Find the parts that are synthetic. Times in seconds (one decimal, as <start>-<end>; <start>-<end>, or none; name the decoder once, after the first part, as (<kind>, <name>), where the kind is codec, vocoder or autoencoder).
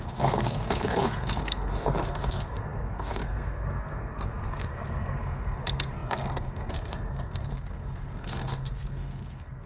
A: 0.0-9.7 (codec, SNAC)